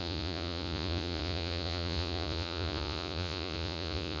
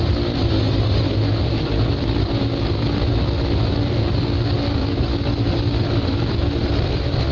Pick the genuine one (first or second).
second